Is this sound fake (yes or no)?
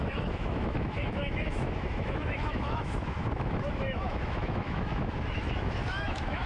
yes